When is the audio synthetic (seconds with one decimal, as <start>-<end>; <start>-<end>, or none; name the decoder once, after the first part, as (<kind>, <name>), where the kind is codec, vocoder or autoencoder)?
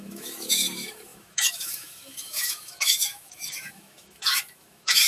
0.0-5.1 (autoencoder, DAC-VAE)